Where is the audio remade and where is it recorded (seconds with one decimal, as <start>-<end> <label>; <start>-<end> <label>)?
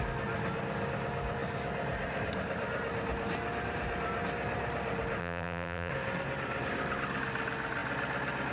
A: 0.0-5.2 recorded; 5.2-5.9 remade; 5.9-8.5 recorded